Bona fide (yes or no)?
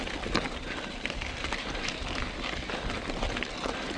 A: yes